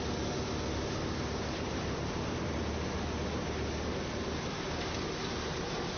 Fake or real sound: real